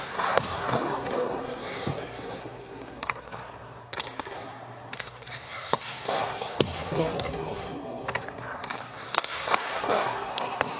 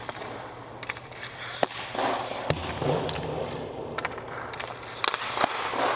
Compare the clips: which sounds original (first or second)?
second